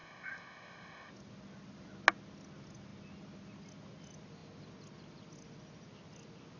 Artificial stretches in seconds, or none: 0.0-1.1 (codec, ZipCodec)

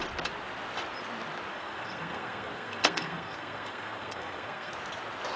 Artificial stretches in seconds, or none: 1.5-4.7 (codec, SNAC)

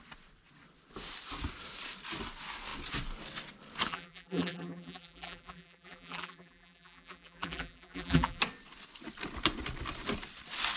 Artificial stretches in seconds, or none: 3.9-8.4 (vocoder, BigVGAN v2)

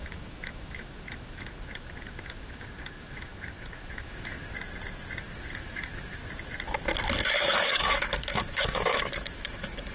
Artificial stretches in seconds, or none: 0.0-4.5 (autoencoder, DAC-VAE); 5.2-6.2; 7.3-9.9

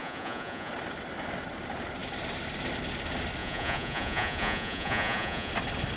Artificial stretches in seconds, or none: 0.0-0.7 (vocoder, Vocos); 3.4-5.5